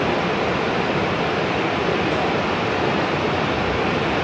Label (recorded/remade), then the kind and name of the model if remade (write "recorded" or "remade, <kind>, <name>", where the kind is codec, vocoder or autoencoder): remade, vocoder, BigVGAN v2